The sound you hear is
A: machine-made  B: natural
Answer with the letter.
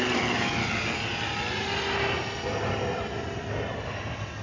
B